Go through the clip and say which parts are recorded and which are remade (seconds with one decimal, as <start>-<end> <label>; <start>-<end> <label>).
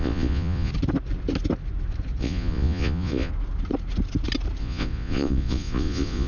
0.0-0.7 remade; 0.7-2.2 recorded; 2.2-3.3 remade; 3.3-4.6 recorded; 4.6-6.3 remade